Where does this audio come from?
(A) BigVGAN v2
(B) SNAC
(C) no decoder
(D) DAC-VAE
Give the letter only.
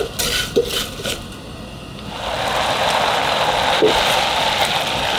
C